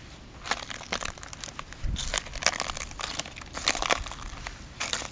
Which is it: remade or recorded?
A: recorded